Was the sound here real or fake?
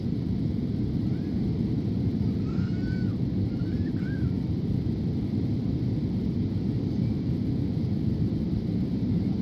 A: fake